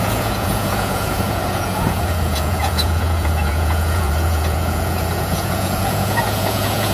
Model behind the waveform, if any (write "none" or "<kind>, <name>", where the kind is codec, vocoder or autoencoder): vocoder, Vocos